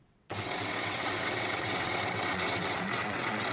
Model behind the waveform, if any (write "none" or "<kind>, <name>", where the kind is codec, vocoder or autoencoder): vocoder, WaveNeXt